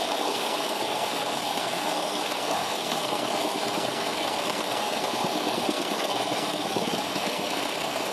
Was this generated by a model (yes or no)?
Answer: yes